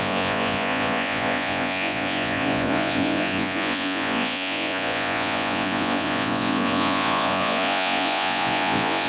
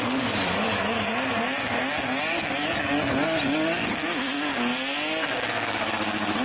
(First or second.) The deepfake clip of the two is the first